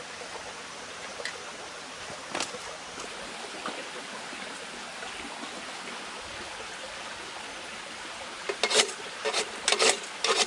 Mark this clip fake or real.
real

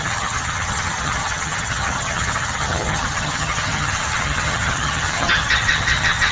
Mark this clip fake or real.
fake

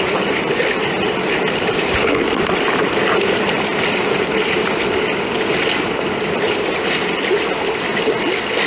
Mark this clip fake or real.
real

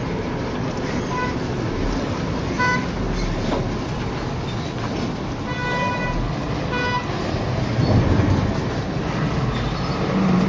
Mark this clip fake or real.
real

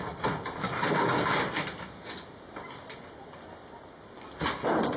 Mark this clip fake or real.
real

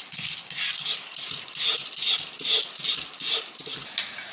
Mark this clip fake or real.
real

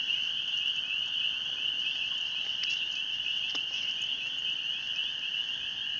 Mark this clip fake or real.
real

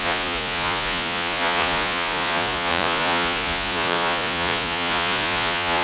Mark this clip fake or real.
fake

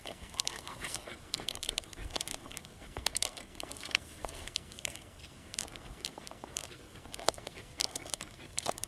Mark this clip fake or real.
fake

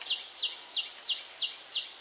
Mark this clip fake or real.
real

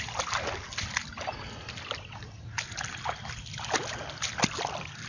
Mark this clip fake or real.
real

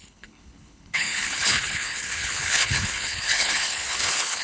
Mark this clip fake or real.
fake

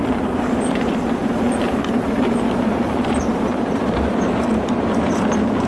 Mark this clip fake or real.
fake